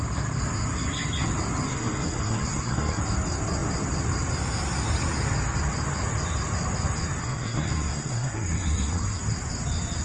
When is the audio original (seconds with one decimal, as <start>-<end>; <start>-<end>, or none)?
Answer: 0.0-1.7; 3.0-7.2; 9.2-10.0